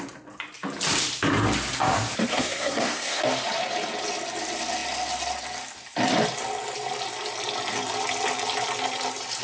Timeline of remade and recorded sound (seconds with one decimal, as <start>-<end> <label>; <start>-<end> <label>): 0.0-2.3 recorded; 2.3-3.2 remade; 3.2-9.4 recorded